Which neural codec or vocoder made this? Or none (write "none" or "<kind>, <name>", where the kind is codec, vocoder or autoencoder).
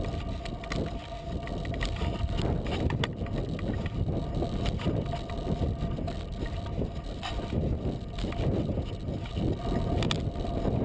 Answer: none